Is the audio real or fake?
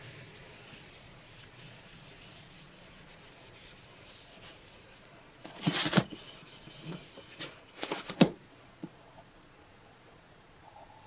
fake